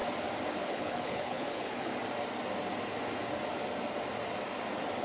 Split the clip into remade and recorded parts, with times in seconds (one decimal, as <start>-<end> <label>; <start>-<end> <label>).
0.0-0.7 recorded; 0.7-1.9 remade; 1.9-5.0 recorded